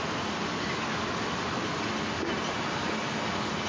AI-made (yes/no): no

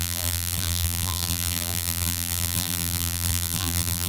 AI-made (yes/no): yes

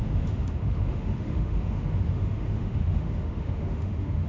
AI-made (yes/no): yes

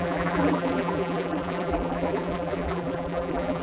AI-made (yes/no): yes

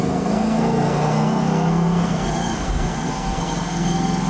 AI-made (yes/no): yes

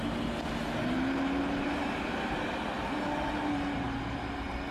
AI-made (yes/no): no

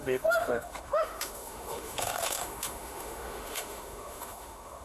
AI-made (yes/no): yes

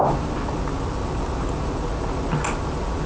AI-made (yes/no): no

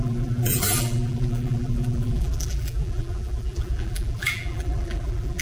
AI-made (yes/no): yes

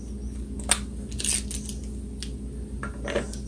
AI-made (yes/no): no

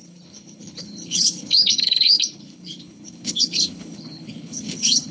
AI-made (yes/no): yes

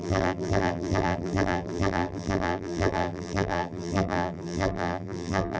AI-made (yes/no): yes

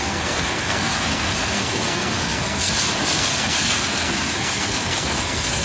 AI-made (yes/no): yes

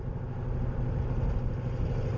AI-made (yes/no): no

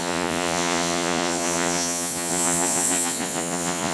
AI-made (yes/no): yes